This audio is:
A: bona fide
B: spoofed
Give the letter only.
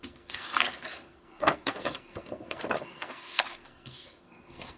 B